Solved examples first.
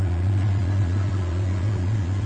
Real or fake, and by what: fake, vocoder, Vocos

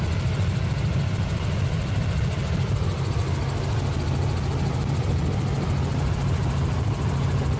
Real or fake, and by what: real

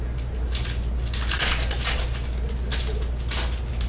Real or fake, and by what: real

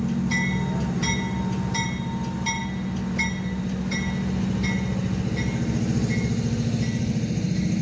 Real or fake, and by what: real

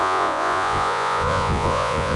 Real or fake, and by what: fake, vocoder, Vocos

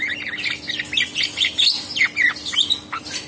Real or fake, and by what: real